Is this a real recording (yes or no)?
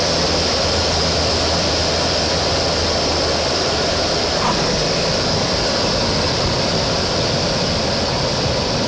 no